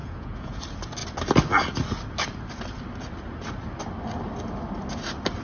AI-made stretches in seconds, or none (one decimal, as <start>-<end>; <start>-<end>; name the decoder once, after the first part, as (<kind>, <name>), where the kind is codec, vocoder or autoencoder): 0.0-0.6 (vocoder, Vocos)